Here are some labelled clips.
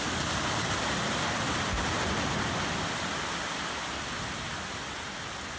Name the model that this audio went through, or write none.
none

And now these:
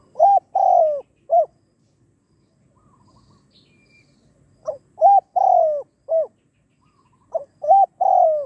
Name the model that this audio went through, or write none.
none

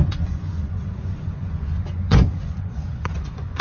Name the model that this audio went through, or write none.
vocoder, Vocos